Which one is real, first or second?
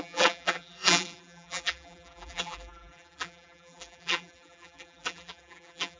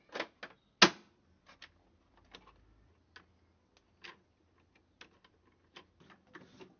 second